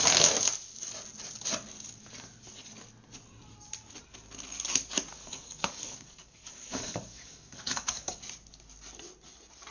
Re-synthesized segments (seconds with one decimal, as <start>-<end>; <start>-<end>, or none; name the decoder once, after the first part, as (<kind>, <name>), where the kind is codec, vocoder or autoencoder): 5.1-8.2 (codec, DAC)